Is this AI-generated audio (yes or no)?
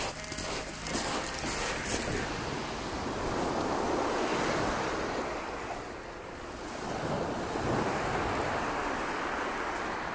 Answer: no